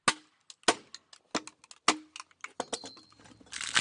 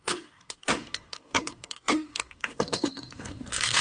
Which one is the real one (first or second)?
first